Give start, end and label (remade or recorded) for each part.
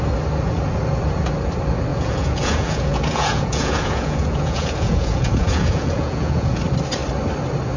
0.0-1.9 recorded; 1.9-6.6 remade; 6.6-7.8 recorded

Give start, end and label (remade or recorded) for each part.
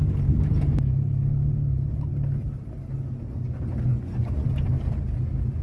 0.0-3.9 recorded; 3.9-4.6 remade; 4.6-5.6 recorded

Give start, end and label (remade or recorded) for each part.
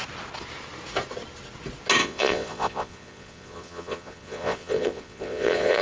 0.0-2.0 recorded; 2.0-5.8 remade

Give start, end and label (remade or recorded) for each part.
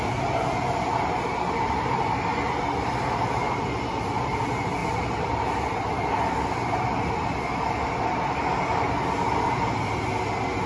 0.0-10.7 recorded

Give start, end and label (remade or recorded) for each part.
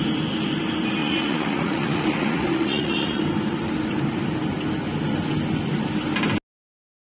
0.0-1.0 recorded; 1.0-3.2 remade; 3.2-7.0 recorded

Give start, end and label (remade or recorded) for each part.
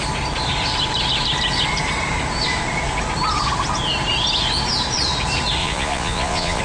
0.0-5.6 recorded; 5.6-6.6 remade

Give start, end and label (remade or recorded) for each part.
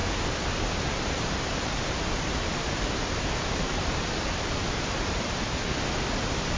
0.0-6.6 recorded